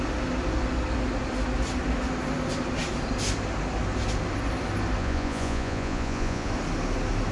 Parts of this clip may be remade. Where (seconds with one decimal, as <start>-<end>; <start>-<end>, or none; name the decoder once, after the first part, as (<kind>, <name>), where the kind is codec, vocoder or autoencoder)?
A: 5.0-6.5 (vocoder, Vocos)